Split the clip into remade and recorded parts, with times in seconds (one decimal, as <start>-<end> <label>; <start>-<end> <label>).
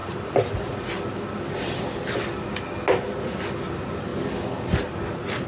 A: 0.0-5.5 recorded